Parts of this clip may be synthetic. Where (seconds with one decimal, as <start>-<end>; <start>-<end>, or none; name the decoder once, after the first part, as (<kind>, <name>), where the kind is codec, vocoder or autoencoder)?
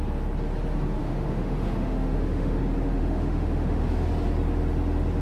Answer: 1.0-2.6 (autoencoder, DAC-VAE); 3.0-4.1